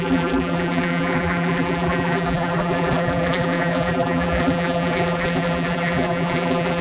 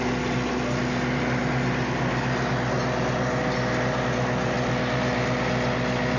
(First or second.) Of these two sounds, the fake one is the first